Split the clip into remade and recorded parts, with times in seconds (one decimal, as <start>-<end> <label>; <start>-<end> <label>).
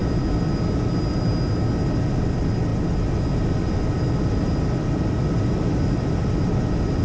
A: 0.0-7.0 recorded